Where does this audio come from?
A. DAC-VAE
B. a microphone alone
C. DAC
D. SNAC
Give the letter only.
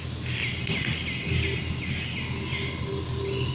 B